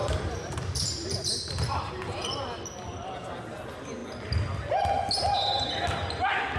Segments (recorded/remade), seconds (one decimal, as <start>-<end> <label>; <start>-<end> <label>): 0.0-1.9 remade; 1.9-6.6 recorded